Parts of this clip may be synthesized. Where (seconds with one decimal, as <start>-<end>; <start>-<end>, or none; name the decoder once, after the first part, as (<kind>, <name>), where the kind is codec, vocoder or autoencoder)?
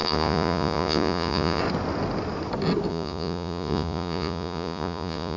0.0-1.6 (vocoder, Vocos); 2.9-5.4